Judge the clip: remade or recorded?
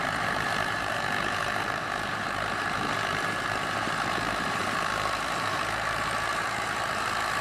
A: remade